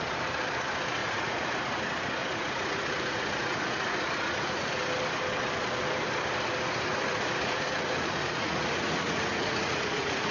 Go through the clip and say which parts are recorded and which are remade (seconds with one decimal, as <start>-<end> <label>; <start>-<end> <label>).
0.0-1.0 recorded; 1.0-1.8 remade; 1.8-2.2 recorded; 2.2-4.7 remade; 4.7-6.9 recorded; 6.9-10.3 remade